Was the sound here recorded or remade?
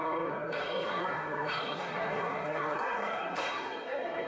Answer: remade